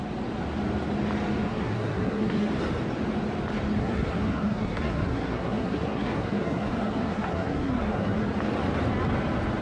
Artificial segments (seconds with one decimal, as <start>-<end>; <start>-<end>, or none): 1.5-2.5; 3.8-8.2